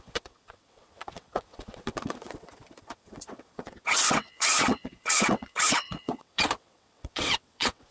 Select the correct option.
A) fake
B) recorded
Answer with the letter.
A